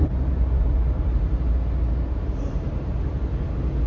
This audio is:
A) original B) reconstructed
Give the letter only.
A